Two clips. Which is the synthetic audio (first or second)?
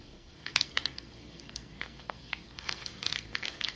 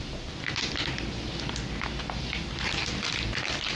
first